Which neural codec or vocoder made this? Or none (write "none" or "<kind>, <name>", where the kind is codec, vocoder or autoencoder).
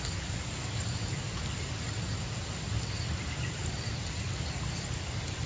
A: none